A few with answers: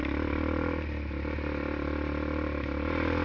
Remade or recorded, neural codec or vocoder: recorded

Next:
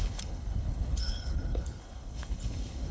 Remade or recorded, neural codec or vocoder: remade, codec, HILCodec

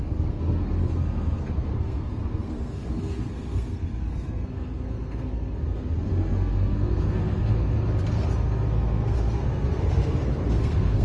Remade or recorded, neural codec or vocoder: remade, codec, SNAC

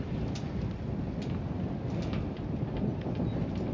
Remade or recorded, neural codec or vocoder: recorded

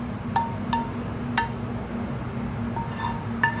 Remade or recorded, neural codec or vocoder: recorded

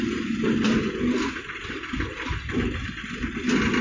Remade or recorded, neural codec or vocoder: recorded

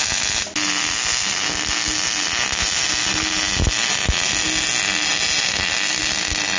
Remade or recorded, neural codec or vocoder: recorded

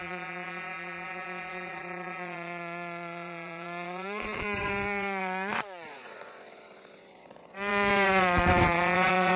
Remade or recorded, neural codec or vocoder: remade, vocoder, Vocos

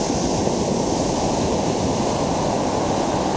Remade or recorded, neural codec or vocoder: recorded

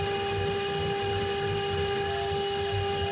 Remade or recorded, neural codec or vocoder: recorded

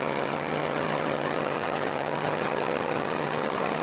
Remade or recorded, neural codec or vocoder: remade, vocoder, HiFi-GAN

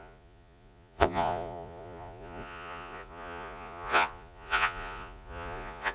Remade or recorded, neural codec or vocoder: remade, vocoder, Vocos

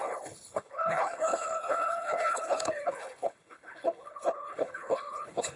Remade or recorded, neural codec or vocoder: remade, codec, HILCodec